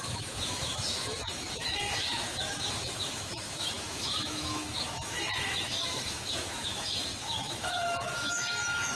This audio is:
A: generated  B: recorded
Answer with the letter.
A